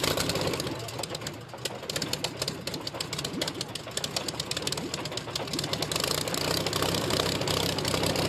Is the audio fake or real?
real